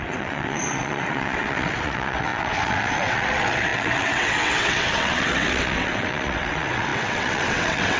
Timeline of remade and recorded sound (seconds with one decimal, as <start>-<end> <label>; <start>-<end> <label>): 0.0-8.0 remade